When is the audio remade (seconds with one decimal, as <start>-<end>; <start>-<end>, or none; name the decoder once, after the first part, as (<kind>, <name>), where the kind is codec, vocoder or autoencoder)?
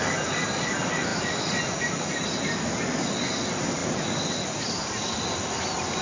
1.1-1.8 (vocoder, BigVGAN v2); 3.8-5.6